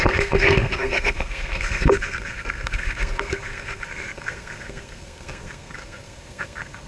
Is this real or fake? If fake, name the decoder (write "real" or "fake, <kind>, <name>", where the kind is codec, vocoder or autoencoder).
fake, codec, SNAC